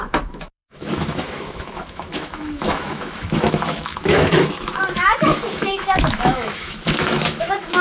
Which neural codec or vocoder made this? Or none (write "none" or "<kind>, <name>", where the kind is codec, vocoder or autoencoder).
autoencoder, DAC-VAE